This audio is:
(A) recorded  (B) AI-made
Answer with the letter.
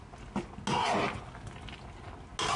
A